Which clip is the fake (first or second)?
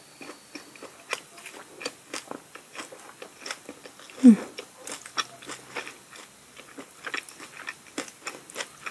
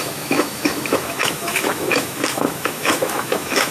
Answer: second